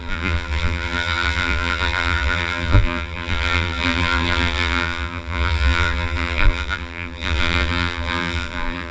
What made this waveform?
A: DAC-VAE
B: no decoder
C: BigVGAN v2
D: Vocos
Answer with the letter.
C